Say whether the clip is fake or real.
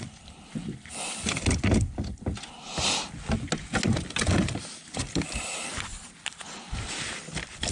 real